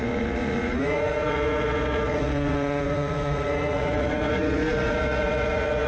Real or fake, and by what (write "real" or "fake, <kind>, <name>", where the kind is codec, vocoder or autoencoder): fake, vocoder, Vocos